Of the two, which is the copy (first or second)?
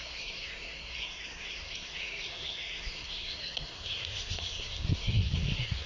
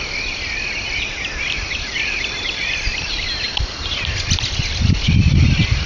first